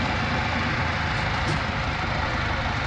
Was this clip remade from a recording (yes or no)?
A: no